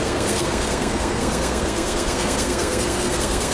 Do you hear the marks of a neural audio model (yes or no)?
yes